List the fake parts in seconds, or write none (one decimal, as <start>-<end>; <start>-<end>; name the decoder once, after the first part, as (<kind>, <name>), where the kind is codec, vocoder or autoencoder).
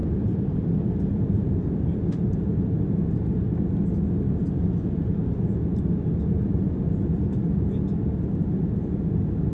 0.0-2.9 (vocoder, BigVGAN v2)